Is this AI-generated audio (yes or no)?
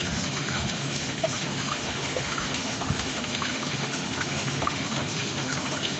yes